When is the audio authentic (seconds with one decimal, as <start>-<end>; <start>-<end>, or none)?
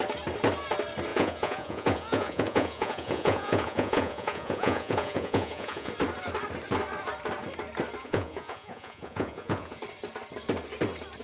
0.0-1.1; 5.9-8.0; 9.8-11.2